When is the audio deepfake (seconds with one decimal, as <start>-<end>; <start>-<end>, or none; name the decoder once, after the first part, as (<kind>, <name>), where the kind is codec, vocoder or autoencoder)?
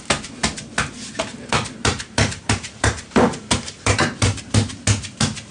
1.3-4.4 (vocoder, BigVGAN v2)